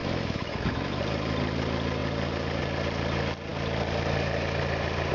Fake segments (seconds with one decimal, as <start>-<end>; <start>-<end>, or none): 0.0-1.0

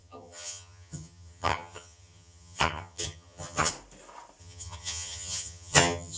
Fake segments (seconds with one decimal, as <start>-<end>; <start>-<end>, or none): 0.0-3.7; 4.4-6.2

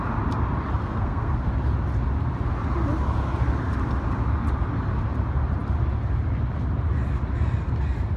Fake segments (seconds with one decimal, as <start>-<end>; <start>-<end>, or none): 0.8-1.5

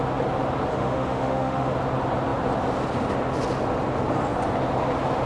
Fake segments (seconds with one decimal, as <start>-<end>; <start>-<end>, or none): 0.7-1.7

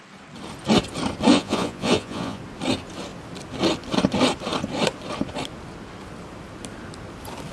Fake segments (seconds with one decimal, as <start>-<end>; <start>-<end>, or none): 1.3-2.4

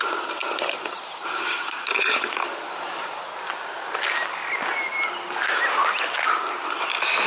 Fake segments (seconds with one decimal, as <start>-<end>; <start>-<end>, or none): none

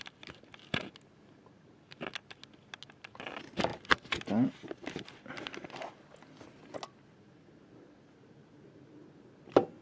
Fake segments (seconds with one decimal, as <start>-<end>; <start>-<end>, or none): none